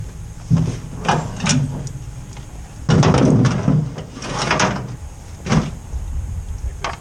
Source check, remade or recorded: recorded